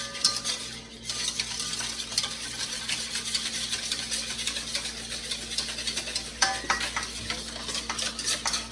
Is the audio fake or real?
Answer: real